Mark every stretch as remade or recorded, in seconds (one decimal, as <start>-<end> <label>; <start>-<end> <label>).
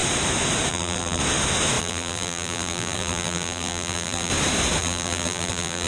0.0-0.7 recorded; 0.7-1.2 remade; 1.2-1.8 recorded; 1.8-4.3 remade; 4.3-4.8 recorded; 4.8-5.9 remade